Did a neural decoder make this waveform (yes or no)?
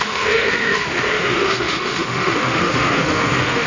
yes